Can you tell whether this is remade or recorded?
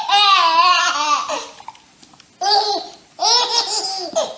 recorded